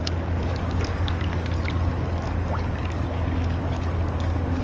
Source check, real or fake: fake